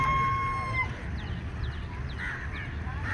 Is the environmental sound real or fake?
real